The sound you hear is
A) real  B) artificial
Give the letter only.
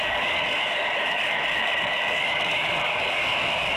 B